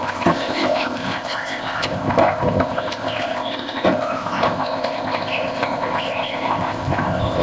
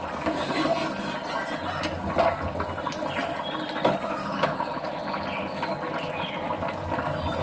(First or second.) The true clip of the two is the second